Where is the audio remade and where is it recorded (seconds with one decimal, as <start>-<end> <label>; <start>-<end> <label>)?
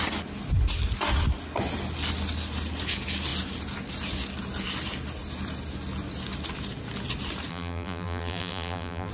0.0-7.5 recorded; 7.5-9.1 remade